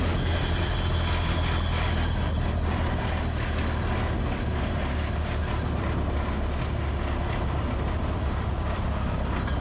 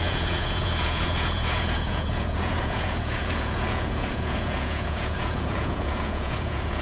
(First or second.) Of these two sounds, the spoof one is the second